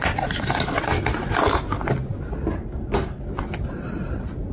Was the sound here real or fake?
real